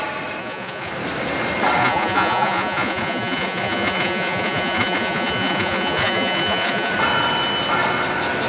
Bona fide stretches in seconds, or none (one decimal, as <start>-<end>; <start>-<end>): 0.0-0.4; 0.9-1.8; 6.9-8.5